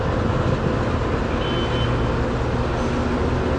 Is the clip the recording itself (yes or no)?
yes